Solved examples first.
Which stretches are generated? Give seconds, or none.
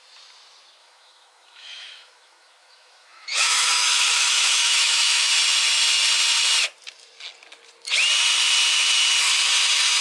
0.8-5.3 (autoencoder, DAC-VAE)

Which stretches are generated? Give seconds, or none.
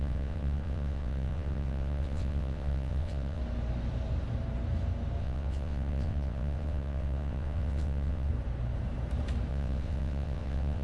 0.0-3.4 (vocoder, WaveNeXt); 5.2-8.3; 9.5-10.8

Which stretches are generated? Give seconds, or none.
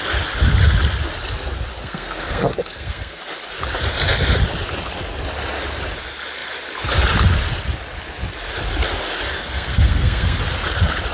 1.8-3.2 (codec, SNAC); 9.3-10.4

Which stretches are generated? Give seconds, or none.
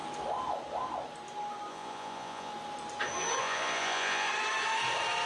1.7-2.5 (vocoder, Vocos); 3.4-4.3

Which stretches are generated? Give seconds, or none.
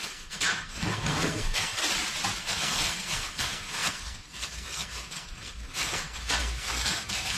0.0-1.8 (codec, SNAC); 2.4-7.4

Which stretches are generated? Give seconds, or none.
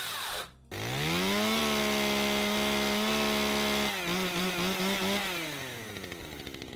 none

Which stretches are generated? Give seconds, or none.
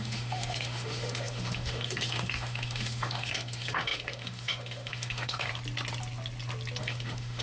0.0-5.5 (autoencoder, DAC-VAE); 6.8-7.4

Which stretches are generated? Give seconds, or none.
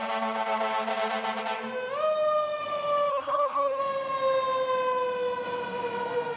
3.1-3.8 (codec, SNAC)